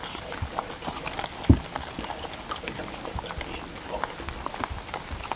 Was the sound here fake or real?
real